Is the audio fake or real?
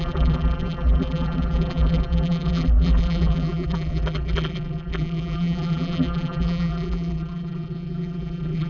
fake